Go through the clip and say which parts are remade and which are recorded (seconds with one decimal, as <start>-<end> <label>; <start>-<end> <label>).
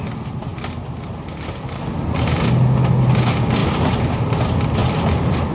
0.0-4.8 recorded; 4.8-5.5 remade